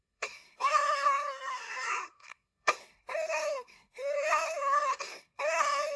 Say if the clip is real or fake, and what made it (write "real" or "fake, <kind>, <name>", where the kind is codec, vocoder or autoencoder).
fake, codec, SNAC